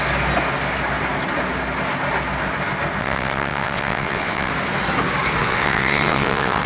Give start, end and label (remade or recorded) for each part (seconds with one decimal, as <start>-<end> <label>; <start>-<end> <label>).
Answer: 0.0-3.0 recorded; 3.0-4.5 remade; 4.5-5.4 recorded; 5.4-6.7 remade